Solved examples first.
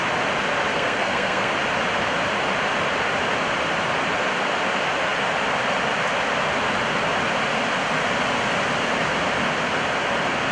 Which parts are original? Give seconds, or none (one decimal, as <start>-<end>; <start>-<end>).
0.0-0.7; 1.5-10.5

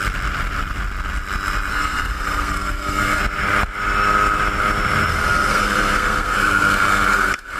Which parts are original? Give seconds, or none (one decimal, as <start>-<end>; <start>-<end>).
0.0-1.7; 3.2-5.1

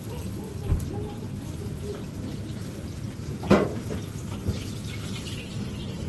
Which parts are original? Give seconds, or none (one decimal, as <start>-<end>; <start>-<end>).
0.0-6.1

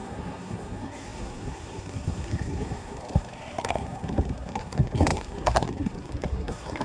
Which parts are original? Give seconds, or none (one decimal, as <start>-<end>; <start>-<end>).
none

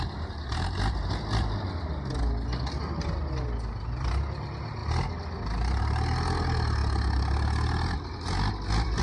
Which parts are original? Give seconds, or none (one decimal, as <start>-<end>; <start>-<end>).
0.0-9.0

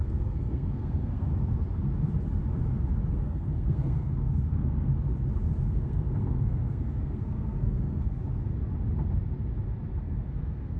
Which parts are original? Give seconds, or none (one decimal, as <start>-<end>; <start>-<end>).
1.3-3.1; 4.9-5.6; 8.2-10.0